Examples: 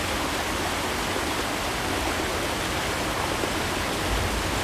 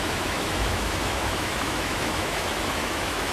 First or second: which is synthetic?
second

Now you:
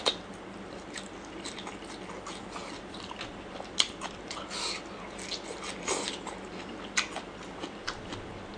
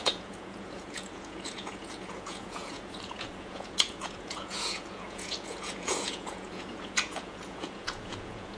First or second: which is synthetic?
second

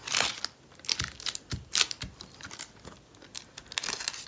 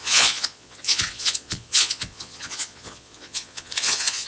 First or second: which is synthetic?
second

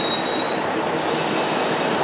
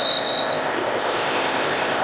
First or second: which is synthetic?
second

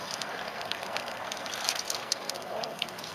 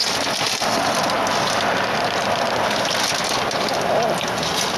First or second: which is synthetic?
first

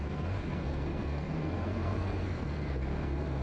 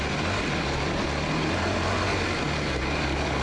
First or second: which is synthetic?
first